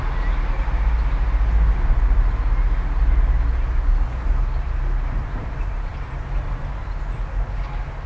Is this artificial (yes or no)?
no